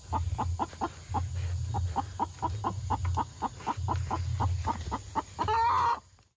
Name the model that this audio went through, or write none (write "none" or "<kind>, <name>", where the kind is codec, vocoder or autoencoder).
none